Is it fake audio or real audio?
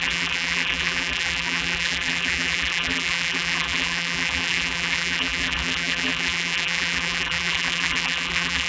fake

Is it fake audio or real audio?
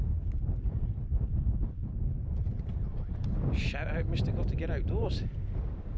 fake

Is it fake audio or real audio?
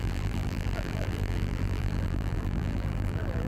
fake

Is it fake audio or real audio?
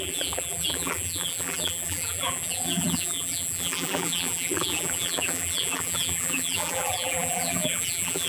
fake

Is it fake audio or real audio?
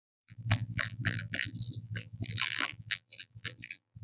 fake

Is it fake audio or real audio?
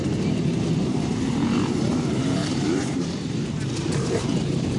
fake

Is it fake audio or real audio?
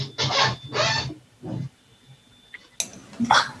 real